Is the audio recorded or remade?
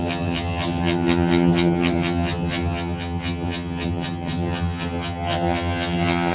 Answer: remade